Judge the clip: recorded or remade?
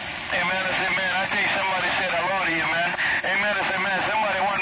recorded